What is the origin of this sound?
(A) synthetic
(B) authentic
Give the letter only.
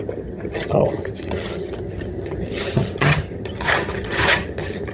A